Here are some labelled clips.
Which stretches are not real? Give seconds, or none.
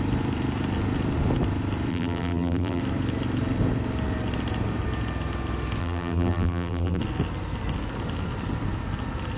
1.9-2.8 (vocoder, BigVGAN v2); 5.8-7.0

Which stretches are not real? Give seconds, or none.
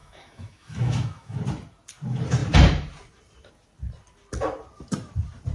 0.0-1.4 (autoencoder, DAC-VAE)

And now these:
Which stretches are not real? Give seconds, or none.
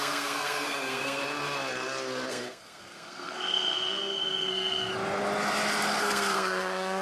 0.0-1.2 (codec, SNAC); 2.3-4.9; 6.0-7.0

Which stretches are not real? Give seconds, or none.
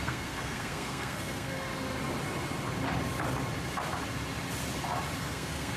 0.0-1.7 (codec, SNAC); 5.2-5.8